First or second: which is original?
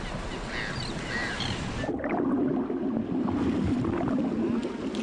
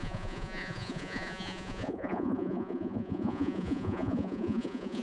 first